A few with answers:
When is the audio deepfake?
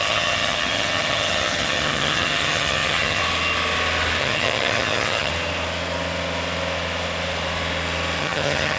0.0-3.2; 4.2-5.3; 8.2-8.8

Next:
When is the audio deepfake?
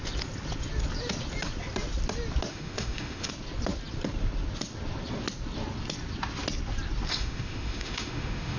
2.5-3.3; 7.1-8.6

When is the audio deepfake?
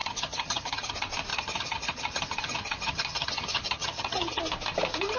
0.0-0.9; 1.3-4.4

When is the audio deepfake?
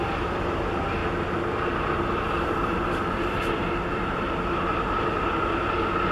none